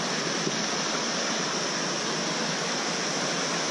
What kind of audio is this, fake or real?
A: real